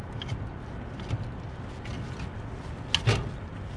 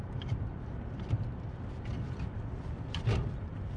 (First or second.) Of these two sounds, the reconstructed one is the second